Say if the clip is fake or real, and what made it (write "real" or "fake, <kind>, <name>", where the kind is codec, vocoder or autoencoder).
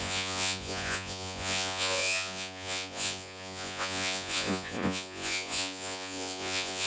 fake, vocoder, Vocos